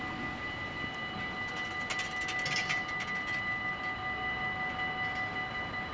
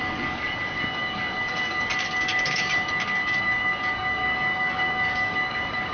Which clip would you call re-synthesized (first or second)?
second